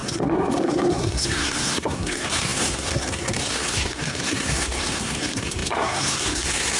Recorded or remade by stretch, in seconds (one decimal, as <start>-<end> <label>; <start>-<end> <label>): 0.0-6.8 remade